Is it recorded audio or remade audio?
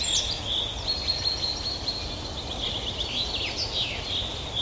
recorded